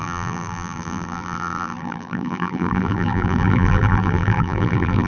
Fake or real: fake